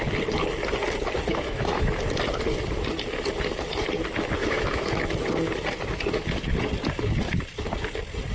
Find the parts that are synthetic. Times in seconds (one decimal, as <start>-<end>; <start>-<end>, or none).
1.3-1.9; 4.4-5.0